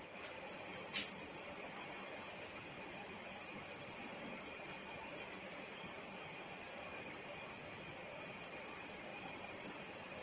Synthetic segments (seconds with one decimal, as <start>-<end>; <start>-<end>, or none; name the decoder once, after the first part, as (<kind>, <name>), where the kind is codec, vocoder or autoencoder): 5.1-6.1 (vocoder, BigVGAN v2); 9.1-9.7